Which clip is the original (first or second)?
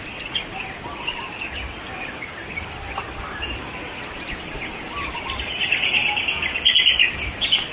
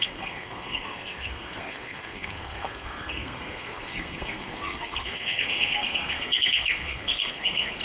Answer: first